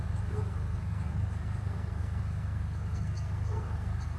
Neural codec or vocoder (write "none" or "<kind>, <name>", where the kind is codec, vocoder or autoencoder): codec, SNAC